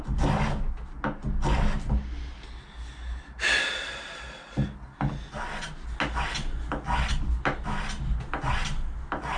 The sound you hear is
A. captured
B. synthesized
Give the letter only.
A